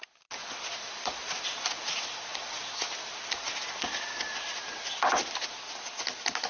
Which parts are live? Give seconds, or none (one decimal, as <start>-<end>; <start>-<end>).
0.0-6.5